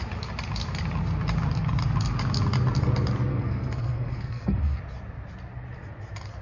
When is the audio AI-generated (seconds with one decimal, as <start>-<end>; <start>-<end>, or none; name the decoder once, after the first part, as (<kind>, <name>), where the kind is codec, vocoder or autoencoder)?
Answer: 3.3-4.8 (codec, SNAC)